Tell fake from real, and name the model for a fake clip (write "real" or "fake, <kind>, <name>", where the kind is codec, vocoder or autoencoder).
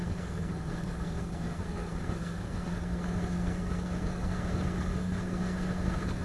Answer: fake, codec, SNAC